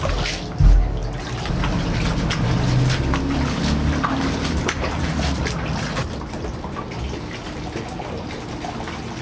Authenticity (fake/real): real